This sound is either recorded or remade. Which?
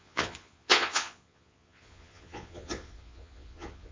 remade